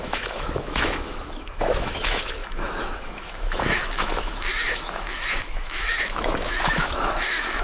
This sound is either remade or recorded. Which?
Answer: remade